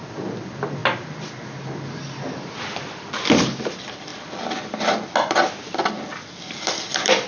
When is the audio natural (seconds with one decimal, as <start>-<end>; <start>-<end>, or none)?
0.0-7.3